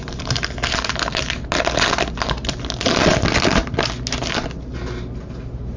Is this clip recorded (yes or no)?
yes